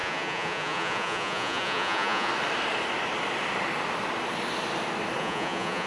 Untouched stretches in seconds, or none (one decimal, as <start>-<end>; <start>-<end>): 2.3-5.2